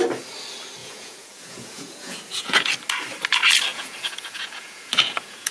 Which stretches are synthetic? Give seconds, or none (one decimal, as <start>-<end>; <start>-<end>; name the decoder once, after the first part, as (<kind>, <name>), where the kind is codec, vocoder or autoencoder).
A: 0.8-2.7 (vocoder, Vocos); 3.7-5.5